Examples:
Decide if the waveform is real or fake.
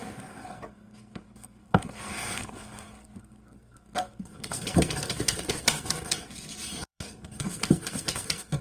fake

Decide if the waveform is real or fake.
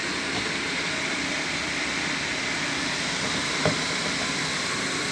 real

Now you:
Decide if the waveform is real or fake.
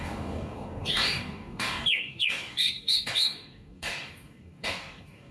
fake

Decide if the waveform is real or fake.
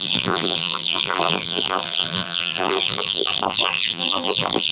fake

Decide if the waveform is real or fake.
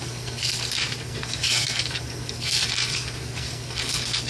fake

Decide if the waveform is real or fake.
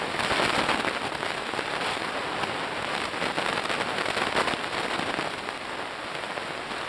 real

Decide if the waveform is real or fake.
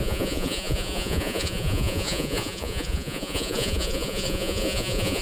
fake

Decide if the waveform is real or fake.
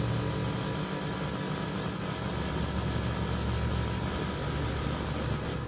real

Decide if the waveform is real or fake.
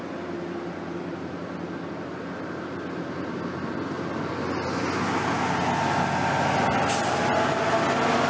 real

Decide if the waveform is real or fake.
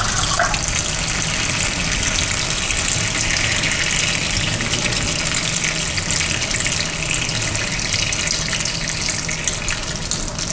real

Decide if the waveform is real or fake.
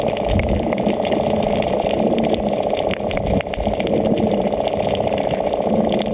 real